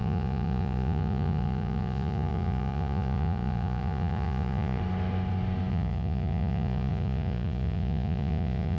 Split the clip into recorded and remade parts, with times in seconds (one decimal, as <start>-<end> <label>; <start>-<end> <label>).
0.0-4.8 remade; 4.8-5.7 recorded; 5.7-8.8 remade